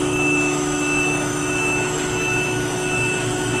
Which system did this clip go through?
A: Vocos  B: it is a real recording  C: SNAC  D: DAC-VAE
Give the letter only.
D